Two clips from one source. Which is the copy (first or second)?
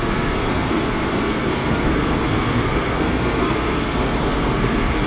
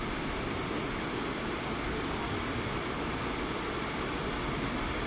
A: first